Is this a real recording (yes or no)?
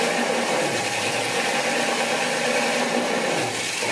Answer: yes